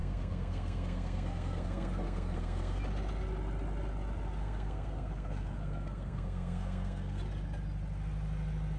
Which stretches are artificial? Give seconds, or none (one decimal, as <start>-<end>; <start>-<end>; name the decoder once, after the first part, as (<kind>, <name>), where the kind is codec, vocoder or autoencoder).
0.0-2.8 (codec, SNAC); 4.4-7.2